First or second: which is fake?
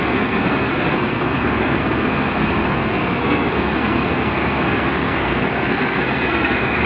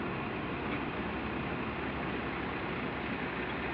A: first